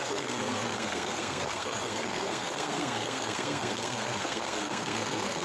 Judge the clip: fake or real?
fake